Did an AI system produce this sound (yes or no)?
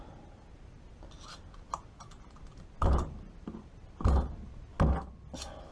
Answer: no